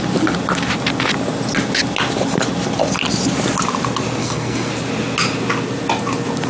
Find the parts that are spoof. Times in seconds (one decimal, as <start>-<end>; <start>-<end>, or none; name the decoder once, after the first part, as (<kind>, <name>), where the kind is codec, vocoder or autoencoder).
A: 4.2-4.7 (codec, SNAC)